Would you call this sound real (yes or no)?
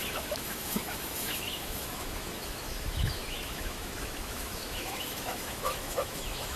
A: no